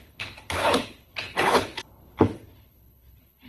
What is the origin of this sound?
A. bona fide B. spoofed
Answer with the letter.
B